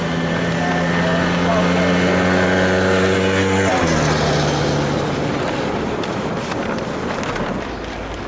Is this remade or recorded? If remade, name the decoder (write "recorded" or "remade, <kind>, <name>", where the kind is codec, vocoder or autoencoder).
recorded